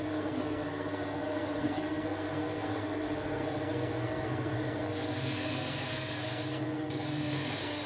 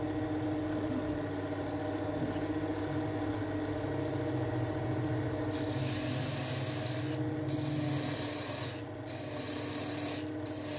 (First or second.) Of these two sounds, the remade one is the first